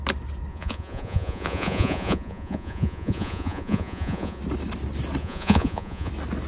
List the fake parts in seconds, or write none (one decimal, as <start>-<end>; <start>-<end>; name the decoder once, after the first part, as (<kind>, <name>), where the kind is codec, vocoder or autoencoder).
0.5-4.4 (vocoder, Vocos); 5.2-6.1